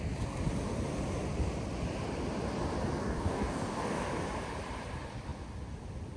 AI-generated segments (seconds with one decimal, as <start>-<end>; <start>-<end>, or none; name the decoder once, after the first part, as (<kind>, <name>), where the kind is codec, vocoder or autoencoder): 3.0-4.1 (codec, DAC)